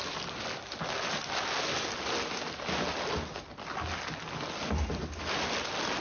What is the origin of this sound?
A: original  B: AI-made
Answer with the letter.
A